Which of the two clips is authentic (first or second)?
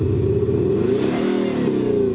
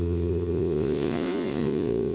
first